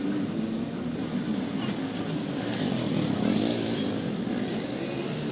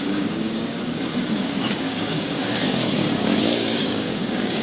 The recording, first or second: first